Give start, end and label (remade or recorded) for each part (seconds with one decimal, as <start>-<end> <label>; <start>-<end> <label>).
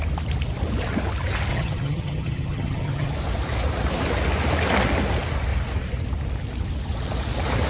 0.0-1.5 recorded; 1.5-3.1 remade; 3.1-7.7 recorded